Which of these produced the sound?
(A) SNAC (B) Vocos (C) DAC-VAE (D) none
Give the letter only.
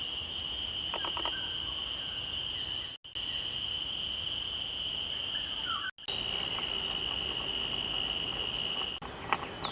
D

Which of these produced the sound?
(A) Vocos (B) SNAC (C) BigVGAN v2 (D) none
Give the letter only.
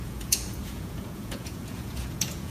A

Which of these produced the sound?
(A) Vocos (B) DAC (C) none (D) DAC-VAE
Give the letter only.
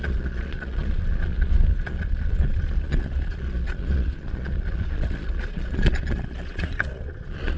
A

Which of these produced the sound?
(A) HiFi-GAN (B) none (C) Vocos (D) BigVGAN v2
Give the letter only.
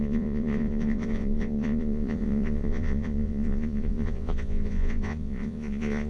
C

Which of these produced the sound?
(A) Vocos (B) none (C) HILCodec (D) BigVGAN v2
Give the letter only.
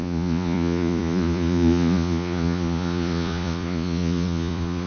A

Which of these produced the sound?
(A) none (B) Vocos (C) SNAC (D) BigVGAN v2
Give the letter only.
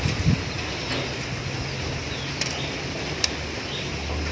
A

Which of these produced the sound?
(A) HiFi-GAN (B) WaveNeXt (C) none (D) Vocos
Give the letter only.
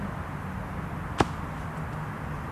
C